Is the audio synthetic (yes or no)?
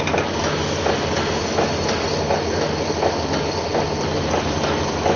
no